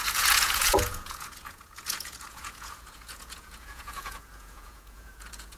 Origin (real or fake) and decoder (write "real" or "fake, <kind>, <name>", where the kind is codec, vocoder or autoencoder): fake, vocoder, Vocos